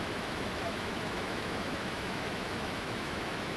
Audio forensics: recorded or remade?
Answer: remade